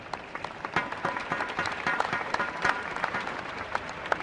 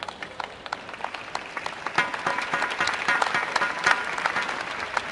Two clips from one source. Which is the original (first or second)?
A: second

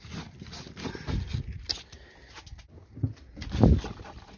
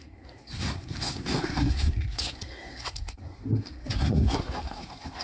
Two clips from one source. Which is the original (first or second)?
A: first